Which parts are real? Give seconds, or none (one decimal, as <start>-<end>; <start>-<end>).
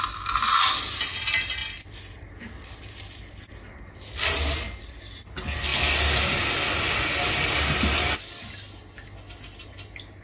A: 0.0-10.2